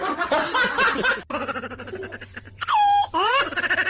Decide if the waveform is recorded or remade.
recorded